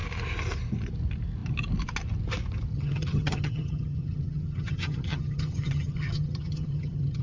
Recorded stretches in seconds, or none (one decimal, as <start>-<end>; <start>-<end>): 0.0-2.7